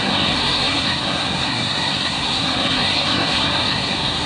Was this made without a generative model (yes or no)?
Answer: no